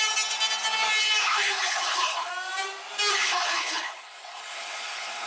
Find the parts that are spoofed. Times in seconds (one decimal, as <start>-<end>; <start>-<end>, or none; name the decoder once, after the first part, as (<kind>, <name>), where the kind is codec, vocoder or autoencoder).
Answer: 1.2-2.3 (codec, HILCodec); 3.1-5.3